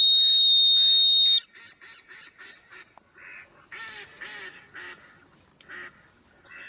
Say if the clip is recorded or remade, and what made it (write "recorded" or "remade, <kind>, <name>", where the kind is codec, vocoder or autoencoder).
recorded